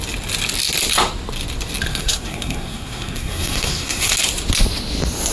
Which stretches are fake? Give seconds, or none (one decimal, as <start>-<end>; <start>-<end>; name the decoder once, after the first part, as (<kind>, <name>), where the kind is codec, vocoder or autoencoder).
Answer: 1.9-4.1 (codec, SNAC)